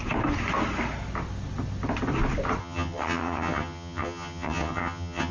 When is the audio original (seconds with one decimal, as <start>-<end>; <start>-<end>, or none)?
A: 0.0-2.6